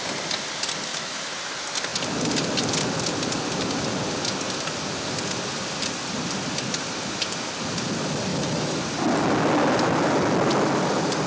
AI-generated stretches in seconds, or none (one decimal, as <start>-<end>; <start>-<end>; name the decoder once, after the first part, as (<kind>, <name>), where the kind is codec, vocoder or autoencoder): 0.9-1.4 (autoencoder, DAC-VAE); 8.3-8.8